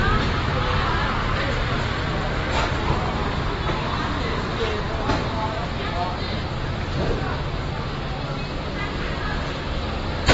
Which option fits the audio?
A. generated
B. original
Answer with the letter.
B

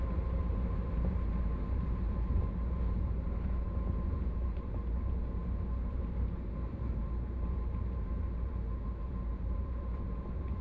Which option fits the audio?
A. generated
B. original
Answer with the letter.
A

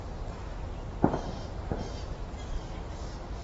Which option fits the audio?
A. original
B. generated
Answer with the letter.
A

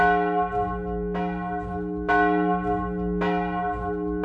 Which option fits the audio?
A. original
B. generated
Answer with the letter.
A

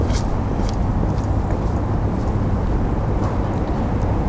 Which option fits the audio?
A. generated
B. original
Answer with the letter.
A